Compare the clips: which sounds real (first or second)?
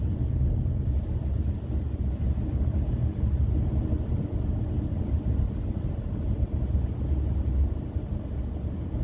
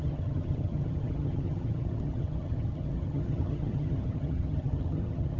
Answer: first